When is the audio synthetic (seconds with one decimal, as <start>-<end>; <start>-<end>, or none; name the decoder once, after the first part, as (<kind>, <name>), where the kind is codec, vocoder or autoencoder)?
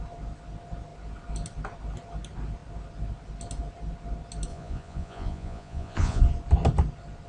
4.5-6.2 (vocoder, Vocos)